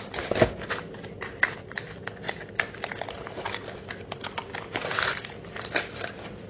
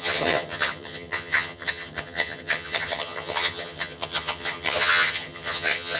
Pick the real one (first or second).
first